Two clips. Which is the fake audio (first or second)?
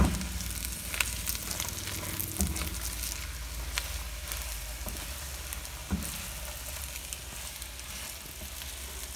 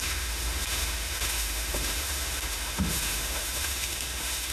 second